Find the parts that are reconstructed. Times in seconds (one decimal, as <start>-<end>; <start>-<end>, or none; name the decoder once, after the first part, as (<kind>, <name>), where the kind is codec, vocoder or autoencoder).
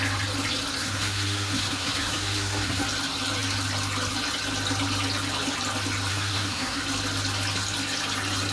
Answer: 0.8-2.8 (codec, SNAC); 6.1-6.8